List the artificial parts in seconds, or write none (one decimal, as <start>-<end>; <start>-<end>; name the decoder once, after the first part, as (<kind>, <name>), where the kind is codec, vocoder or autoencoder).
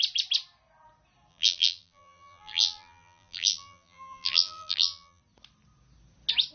1.3-5.2 (vocoder, BigVGAN v2)